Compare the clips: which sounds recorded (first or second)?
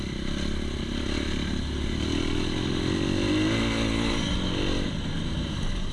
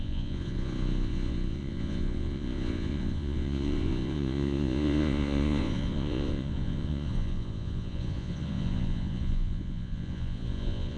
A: first